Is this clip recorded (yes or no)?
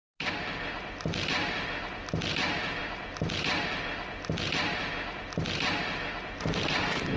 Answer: yes